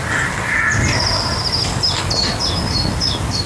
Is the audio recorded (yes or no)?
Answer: yes